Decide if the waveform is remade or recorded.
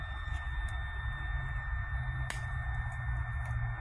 recorded